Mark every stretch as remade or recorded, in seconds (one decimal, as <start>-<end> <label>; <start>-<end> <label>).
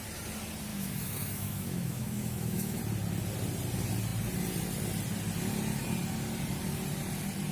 0.0-0.7 recorded; 0.7-2.8 remade; 2.8-7.5 recorded